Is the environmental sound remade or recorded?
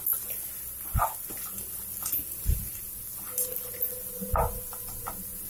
recorded